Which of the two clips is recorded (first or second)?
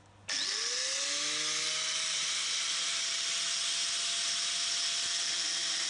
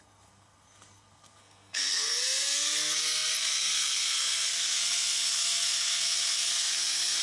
first